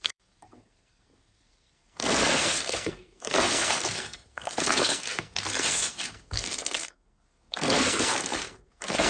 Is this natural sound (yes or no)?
no